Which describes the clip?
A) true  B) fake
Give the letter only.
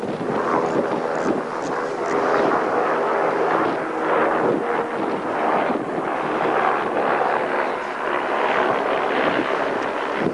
A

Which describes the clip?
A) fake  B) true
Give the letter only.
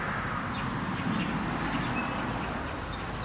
B